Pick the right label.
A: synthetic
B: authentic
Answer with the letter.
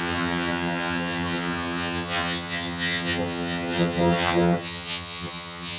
A